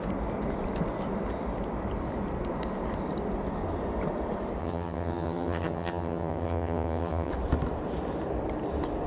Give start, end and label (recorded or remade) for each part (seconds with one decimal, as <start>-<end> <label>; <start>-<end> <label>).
0.0-4.6 recorded; 4.6-7.3 remade; 7.3-9.1 recorded